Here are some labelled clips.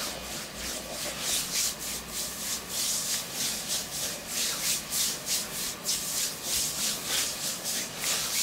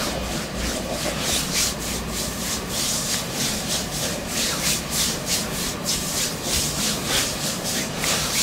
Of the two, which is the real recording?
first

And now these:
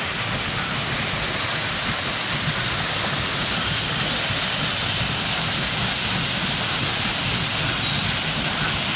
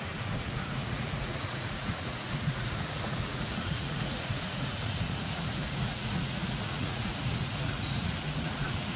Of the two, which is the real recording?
first